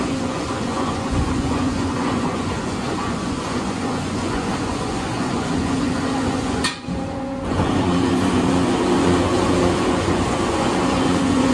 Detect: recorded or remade remade